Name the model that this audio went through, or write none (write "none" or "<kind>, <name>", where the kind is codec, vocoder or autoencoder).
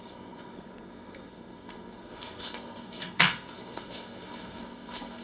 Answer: codec, SNAC